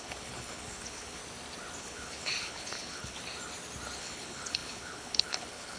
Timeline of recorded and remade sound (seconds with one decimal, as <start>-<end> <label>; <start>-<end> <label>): 0.0-1.2 remade; 1.2-1.8 recorded; 1.8-3.2 remade; 3.2-4.0 recorded; 4.0-5.8 remade

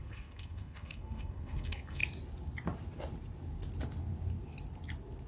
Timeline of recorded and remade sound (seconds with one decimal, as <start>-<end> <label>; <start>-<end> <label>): 0.0-2.0 remade; 2.0-5.3 recorded

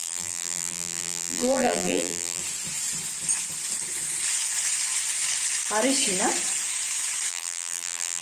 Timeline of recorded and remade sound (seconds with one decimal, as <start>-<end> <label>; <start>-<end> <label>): 0.0-2.4 remade; 2.4-7.3 recorded; 7.3-8.2 remade

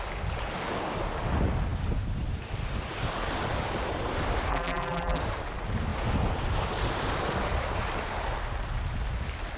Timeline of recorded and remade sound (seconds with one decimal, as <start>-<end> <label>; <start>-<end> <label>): 0.0-4.5 recorded; 4.5-5.2 remade; 5.2-9.6 recorded